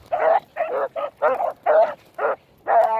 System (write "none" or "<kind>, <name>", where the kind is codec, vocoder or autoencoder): none